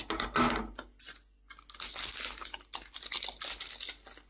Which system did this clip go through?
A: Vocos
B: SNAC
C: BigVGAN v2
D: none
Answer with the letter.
D